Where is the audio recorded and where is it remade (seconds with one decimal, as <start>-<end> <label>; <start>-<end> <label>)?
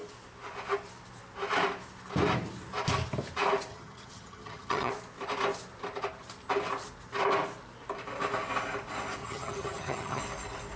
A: 0.0-3.7 recorded; 3.7-4.9 remade; 4.9-9.2 recorded; 9.2-10.2 remade; 10.2-10.8 recorded